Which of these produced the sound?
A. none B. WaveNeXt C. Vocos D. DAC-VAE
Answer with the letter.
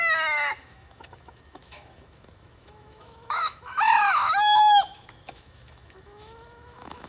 D